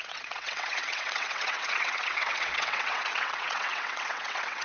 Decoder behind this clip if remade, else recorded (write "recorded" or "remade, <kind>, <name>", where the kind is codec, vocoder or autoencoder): remade, vocoder, WaveNeXt